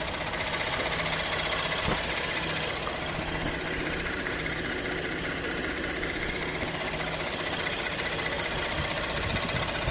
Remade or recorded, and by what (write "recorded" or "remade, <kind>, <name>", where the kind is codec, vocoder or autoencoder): recorded